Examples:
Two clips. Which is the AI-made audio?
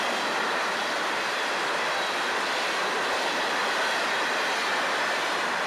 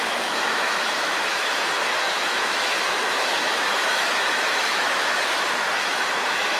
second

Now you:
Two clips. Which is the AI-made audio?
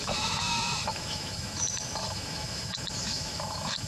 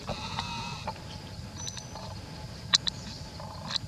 first